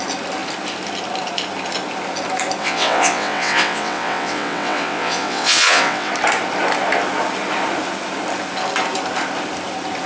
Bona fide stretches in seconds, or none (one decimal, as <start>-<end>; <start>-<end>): 0.0-2.6; 6.1-10.1